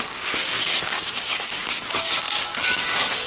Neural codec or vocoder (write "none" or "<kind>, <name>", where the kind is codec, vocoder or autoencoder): codec, DAC